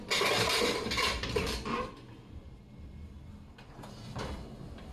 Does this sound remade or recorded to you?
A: recorded